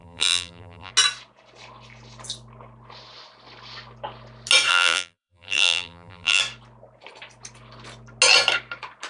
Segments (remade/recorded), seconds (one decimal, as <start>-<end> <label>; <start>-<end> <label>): 0.0-0.9 remade; 0.9-4.7 recorded; 4.7-6.4 remade; 6.4-9.1 recorded